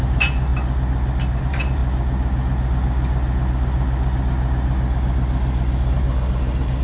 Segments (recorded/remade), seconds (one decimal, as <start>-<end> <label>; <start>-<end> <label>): 0.0-0.5 remade; 0.5-1.4 recorded; 1.4-1.8 remade; 1.8-5.9 recorded; 5.9-6.8 remade